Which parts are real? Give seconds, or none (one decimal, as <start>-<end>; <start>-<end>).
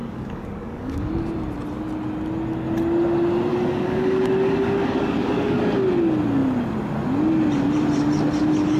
1.1-3.5; 5.6-8.8